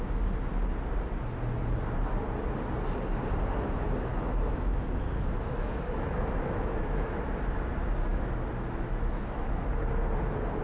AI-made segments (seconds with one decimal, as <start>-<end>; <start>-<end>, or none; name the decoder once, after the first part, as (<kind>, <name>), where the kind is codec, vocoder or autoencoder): 4.1-7.3 (autoencoder, DAC-VAE); 8.1-9.7